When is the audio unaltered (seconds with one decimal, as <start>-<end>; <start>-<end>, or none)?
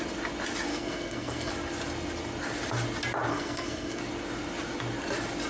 0.0-0.7; 1.5-3.3; 4.0-5.5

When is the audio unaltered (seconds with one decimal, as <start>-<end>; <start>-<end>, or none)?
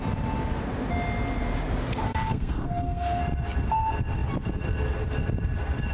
0.0-2.0; 3.2-5.9